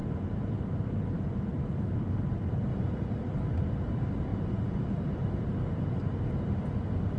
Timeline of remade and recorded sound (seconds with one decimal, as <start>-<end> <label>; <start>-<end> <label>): 0.0-2.7 recorded; 2.7-3.9 remade; 3.9-4.3 recorded; 4.3-6.7 remade; 6.7-7.2 recorded